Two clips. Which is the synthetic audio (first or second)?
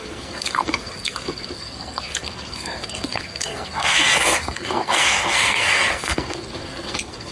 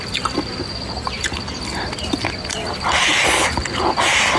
first